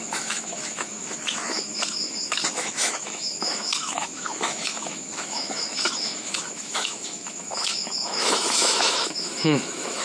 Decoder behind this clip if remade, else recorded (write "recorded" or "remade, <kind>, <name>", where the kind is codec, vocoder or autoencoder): remade, autoencoder, DAC-VAE